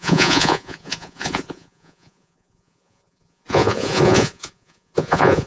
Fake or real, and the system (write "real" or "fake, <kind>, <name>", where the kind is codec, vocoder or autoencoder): fake, vocoder, Vocos